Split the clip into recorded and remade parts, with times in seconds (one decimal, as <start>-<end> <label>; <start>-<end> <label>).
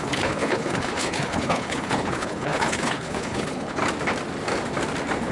0.0-3.8 remade; 3.8-5.3 recorded